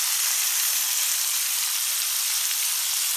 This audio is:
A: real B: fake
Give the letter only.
A